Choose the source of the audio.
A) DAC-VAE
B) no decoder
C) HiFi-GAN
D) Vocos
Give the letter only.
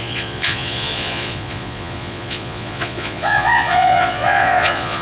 D